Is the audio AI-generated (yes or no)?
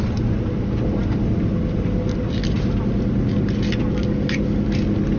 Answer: no